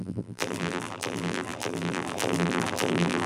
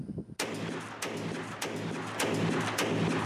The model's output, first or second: first